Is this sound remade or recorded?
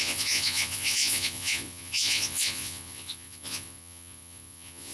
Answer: remade